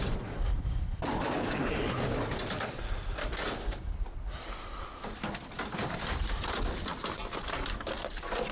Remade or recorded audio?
recorded